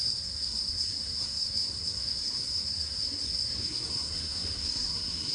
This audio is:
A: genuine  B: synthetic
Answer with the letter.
B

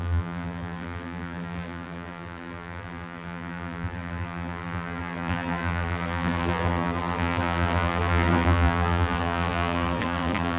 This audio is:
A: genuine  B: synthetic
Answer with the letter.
B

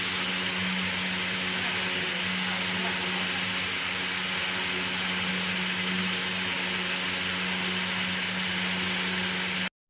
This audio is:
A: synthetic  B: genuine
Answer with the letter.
B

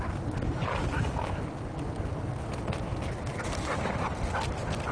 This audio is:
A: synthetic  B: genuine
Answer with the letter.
B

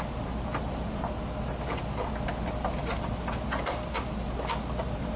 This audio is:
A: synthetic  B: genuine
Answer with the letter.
B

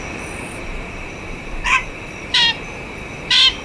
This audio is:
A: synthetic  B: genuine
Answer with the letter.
B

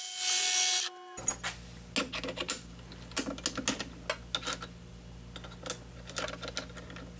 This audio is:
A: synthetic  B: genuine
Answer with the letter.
B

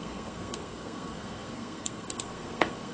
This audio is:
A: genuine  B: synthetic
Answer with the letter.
B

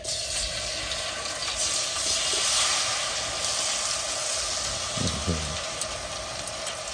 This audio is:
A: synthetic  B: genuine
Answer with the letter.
B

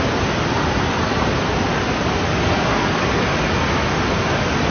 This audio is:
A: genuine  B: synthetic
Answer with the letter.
A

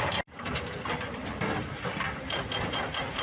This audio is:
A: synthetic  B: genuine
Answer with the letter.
B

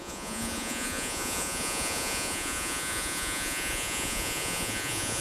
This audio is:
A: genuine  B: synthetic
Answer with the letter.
B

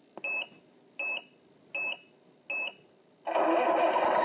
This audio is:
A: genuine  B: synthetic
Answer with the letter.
A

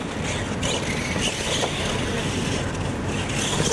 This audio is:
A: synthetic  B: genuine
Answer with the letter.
B